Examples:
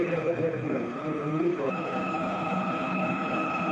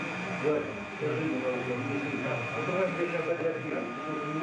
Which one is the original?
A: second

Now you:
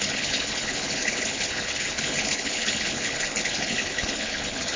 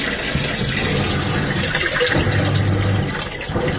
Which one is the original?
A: second